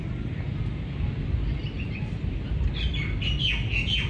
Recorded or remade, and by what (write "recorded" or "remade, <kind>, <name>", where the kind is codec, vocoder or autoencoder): recorded